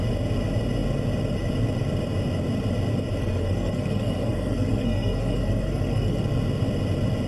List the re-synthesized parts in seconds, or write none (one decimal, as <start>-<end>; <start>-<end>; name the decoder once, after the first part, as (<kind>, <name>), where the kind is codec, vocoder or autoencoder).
3.2-6.2 (codec, SNAC)